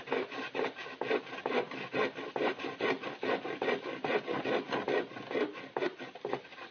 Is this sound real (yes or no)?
yes